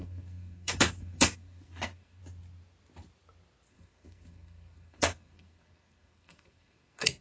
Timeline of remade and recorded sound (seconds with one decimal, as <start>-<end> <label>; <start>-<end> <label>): 0.0-2.2 remade; 2.2-3.7 recorded; 3.7-7.2 remade